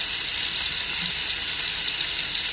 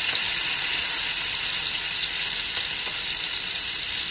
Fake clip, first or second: second